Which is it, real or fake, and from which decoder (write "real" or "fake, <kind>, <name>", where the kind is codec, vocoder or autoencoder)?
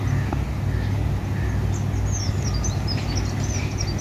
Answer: real